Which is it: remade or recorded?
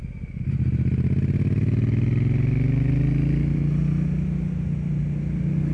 recorded